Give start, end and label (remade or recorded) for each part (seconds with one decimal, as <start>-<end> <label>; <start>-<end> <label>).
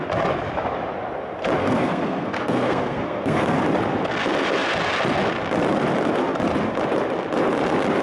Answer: 0.0-1.6 recorded; 1.6-3.6 remade; 3.6-8.0 recorded